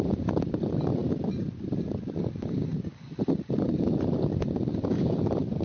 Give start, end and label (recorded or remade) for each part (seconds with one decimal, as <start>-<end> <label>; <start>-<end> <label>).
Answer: 0.0-5.6 recorded